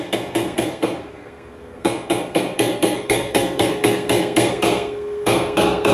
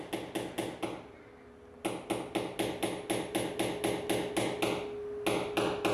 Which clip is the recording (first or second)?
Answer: second